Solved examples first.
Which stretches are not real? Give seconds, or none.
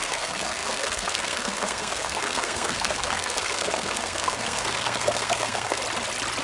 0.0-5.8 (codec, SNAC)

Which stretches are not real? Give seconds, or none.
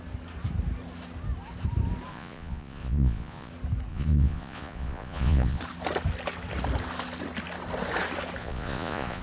2.1-3.5 (vocoder, Vocos); 3.9-5.6; 8.4-9.2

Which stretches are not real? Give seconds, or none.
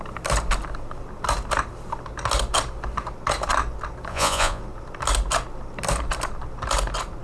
4.1-4.6 (vocoder, Vocos)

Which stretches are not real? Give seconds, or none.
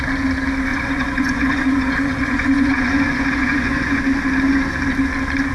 0.7-4.0 (vocoder, Vocos)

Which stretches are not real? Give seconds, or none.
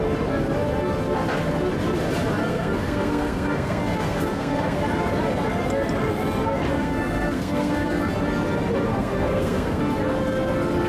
2.4-4.8 (codec, SNAC); 6.8-8.1; 8.9-9.8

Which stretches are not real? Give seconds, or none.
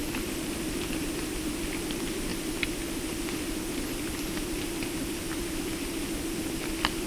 0.0-0.8 (vocoder, BigVGAN v2)